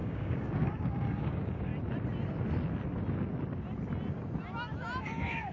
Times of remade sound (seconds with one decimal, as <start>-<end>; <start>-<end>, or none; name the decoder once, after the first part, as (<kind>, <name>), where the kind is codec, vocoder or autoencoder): 0.0-1.7 (codec, DAC); 5.0-5.5